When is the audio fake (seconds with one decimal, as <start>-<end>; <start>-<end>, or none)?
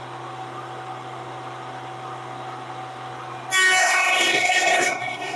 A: 3.8-5.4